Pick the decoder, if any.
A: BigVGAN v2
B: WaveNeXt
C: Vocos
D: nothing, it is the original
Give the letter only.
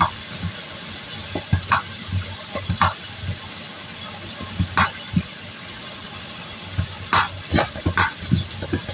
D